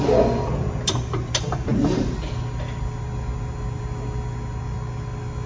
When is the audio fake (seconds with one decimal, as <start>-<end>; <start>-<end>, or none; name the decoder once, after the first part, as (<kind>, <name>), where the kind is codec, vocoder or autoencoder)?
none